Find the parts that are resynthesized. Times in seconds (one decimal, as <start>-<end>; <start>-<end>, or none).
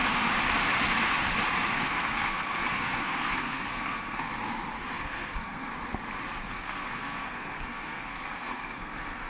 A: 1.7-4.3; 4.9-5.7; 6.4-9.3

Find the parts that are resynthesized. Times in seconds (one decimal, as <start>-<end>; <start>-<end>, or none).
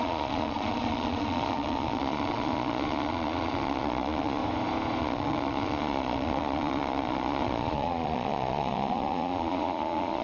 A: 0.0-4.4; 5.0-10.2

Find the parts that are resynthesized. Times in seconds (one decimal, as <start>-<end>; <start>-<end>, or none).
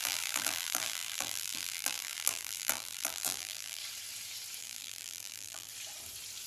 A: 0.0-3.8; 4.6-5.7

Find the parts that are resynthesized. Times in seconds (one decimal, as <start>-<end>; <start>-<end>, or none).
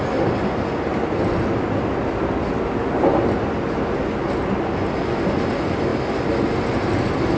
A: none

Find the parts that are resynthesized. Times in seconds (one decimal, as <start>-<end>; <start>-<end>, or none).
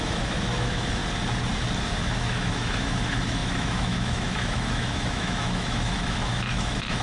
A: 0.0-1.0; 2.0-7.0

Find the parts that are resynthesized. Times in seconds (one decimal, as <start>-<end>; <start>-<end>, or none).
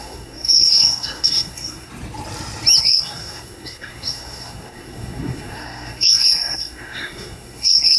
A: 0.0-1.9; 2.8-8.0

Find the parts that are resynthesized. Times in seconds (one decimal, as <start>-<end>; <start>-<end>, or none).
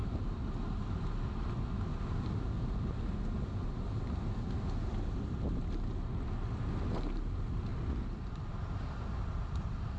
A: none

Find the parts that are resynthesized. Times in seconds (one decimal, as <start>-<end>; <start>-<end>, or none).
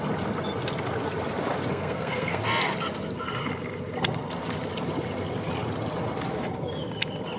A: 1.7-2.4